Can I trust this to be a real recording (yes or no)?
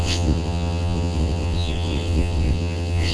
no